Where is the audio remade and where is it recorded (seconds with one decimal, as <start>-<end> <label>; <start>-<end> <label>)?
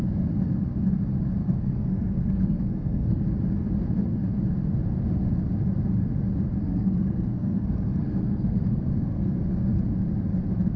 0.0-1.4 recorded; 1.4-3.2 remade; 3.2-6.6 recorded; 6.6-9.4 remade; 9.4-10.8 recorded